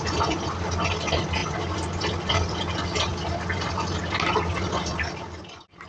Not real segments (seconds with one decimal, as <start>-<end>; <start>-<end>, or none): none